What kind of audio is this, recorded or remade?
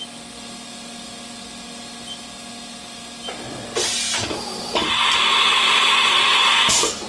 recorded